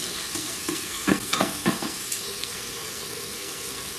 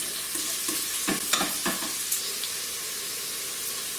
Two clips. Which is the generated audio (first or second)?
first